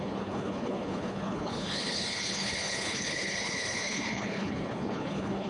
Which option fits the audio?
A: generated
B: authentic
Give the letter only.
A